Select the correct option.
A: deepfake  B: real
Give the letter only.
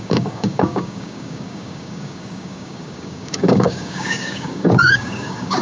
A